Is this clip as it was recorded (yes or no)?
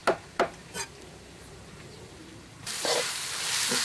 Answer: no